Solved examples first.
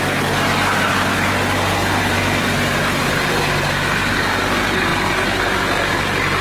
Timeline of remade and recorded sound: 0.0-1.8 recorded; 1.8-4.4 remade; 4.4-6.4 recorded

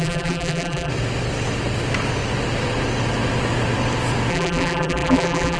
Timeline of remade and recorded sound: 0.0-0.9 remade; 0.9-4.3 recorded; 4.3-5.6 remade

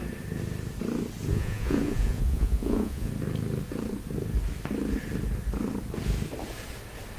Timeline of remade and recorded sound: 0.0-1.3 recorded; 1.3-3.1 remade; 3.1-7.2 recorded

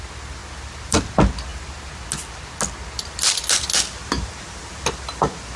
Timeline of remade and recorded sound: 0.0-5.6 recorded

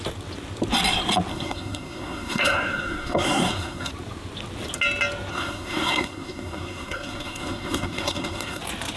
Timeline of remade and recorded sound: 0.0-1.3 recorded; 1.3-3.9 remade; 3.9-5.3 recorded; 5.3-8.6 remade; 8.6-9.0 recorded

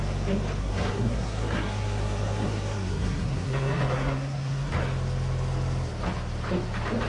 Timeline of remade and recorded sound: 0.0-0.6 recorded; 0.6-4.7 remade; 4.7-7.1 recorded

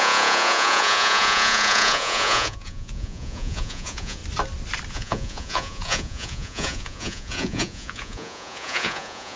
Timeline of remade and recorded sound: 0.0-4.2 remade; 4.2-4.9 recorded; 4.9-9.4 remade